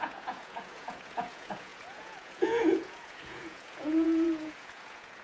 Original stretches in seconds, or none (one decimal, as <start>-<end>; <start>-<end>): none